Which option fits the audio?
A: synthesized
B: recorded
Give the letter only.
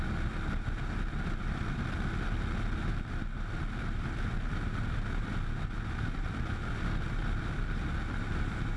B